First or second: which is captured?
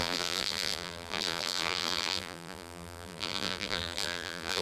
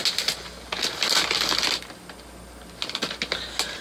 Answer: second